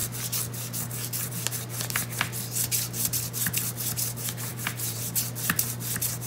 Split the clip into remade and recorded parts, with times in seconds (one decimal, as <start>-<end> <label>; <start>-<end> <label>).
0.0-4.5 recorded; 4.5-5.0 remade; 5.0-6.3 recorded